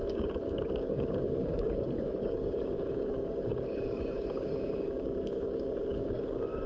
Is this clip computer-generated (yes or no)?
yes